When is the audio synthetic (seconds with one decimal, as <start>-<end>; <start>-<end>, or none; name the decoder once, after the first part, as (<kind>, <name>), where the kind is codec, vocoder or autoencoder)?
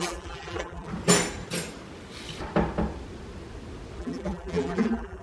0.0-0.9 (vocoder, BigVGAN v2); 4.0-5.2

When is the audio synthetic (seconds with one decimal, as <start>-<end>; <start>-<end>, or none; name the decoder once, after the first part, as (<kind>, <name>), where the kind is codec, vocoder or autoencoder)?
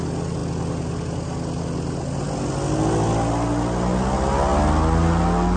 none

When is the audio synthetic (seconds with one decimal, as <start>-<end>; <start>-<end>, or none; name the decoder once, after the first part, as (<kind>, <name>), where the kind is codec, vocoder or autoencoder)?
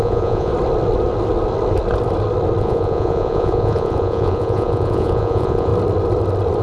0.0-0.5 (vocoder, Vocos); 2.6-5.7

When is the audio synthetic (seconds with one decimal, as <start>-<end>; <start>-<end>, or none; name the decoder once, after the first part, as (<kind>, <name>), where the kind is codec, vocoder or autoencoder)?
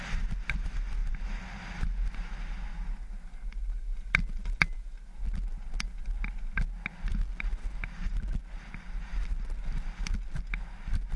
1.0-1.6 (vocoder, BigVGAN v2)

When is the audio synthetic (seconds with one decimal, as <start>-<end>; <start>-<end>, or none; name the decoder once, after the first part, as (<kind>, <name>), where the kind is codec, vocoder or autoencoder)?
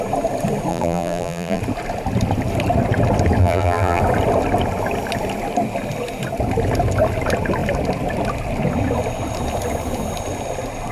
0.7-1.6 (vocoder, BigVGAN v2); 3.4-4.0